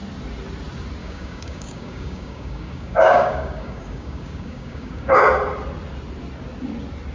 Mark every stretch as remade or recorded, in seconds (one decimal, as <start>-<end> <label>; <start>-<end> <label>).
0.0-1.0 recorded; 1.0-5.3 remade; 5.3-7.1 recorded